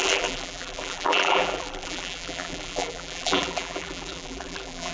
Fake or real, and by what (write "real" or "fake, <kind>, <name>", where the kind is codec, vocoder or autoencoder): fake, vocoder, BigVGAN v2